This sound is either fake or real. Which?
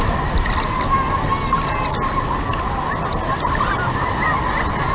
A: real